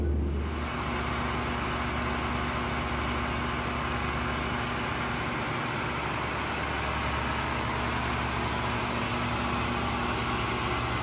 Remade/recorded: recorded